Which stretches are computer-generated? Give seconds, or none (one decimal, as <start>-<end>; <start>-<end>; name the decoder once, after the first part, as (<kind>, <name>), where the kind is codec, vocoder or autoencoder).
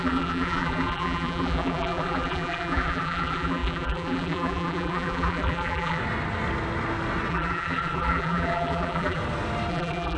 0.0-6.0 (vocoder, BigVGAN v2); 7.3-9.2; 9.7-10.2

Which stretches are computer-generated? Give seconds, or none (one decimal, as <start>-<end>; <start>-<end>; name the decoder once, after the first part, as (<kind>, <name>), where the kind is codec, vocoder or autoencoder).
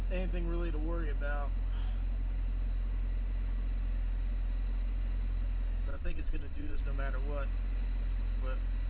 5.9-6.8 (vocoder, WaveNeXt)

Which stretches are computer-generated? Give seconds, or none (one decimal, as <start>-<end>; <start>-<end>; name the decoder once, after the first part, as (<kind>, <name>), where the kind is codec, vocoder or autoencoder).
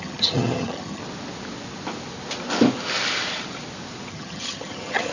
0.0-1.0 (vocoder, HiFi-GAN); 4.1-5.1